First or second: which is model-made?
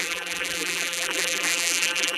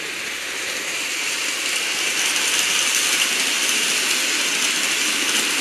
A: first